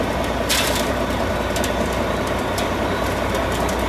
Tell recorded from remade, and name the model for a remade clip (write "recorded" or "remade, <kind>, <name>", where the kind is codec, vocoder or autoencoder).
recorded